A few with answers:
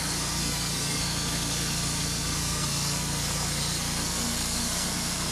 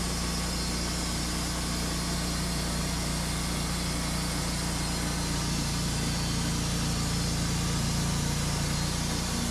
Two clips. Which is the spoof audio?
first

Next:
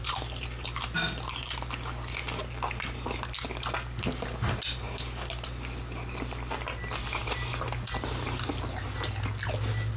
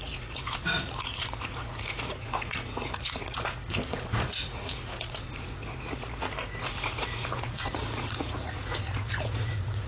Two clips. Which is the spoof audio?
second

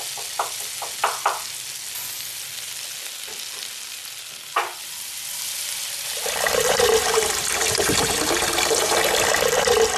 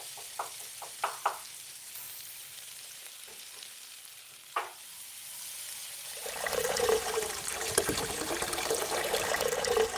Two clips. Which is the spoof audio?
second